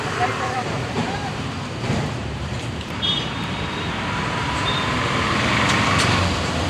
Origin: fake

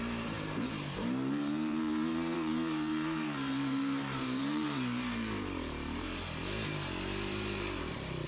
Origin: fake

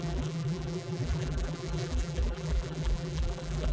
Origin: fake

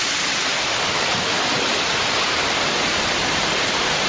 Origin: fake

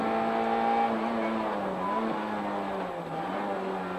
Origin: real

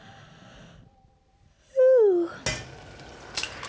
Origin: real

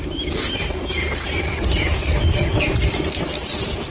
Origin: fake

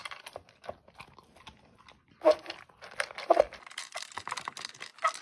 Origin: real